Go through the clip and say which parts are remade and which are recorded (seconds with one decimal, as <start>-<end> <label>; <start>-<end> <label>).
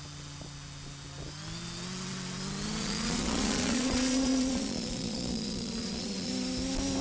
0.0-2.8 recorded; 2.8-6.3 remade; 6.3-7.0 recorded